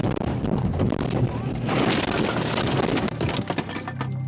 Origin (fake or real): real